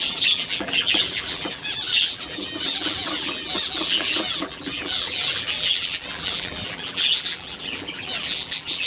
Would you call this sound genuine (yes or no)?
no